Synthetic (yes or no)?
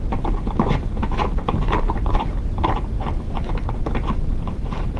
yes